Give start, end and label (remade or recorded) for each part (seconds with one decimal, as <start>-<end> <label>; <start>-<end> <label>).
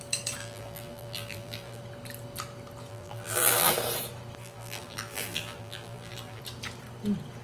0.0-0.4 recorded; 0.4-1.8 remade; 1.8-2.9 recorded; 2.9-3.7 remade; 3.7-4.4 recorded; 4.4-6.4 remade; 6.4-7.4 recorded